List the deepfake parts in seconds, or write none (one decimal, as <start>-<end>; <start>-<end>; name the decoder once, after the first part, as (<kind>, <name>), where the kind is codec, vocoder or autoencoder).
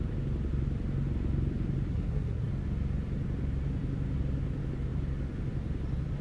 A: 1.9-2.5 (codec, SNAC)